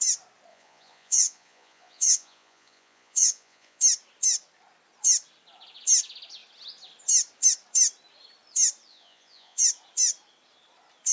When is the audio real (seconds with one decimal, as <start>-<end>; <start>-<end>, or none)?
0.0-0.5; 3.8-8.9; 9.6-11.1